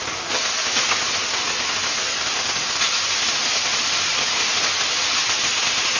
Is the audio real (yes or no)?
yes